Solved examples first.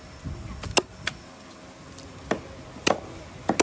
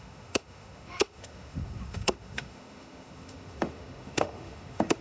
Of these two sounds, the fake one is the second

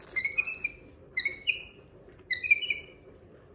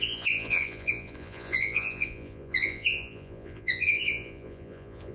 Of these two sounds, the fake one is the second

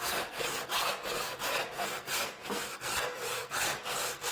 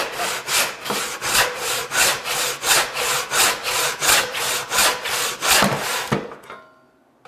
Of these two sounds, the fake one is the first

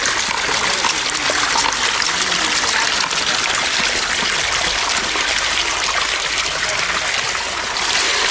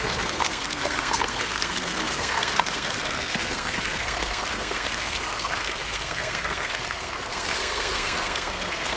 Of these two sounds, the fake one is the second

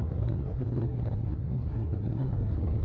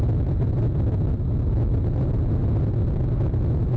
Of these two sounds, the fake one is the first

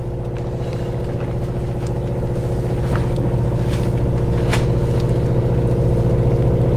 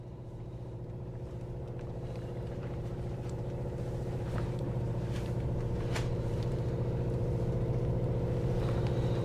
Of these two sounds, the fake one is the second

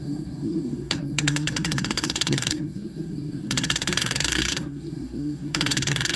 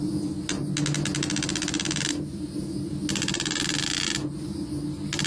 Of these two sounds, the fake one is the first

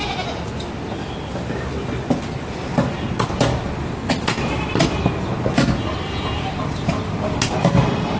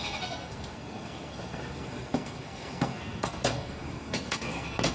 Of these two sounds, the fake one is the second